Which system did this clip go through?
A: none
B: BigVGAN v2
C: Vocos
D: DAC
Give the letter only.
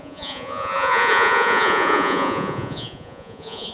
C